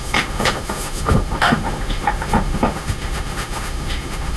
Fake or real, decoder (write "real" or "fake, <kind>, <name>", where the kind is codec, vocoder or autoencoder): fake, autoencoder, DAC-VAE